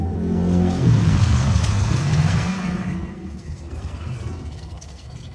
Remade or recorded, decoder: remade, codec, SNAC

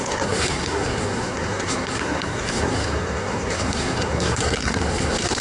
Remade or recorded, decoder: remade, codec, SNAC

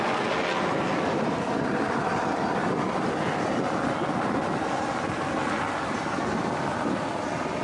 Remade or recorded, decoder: recorded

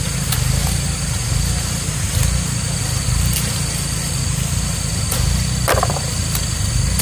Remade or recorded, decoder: recorded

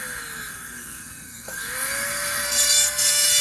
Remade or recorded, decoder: remade, codec, SNAC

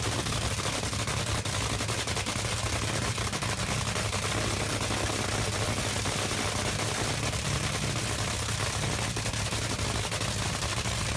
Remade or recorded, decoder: recorded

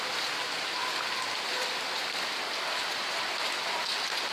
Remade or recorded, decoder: recorded